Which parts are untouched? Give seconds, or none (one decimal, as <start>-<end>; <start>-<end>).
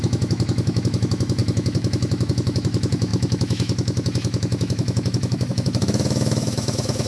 none